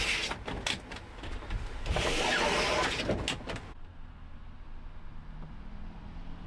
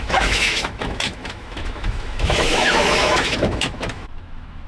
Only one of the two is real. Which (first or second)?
first